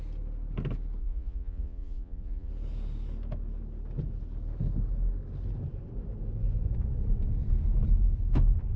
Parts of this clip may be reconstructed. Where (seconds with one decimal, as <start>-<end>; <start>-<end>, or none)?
1.0-2.5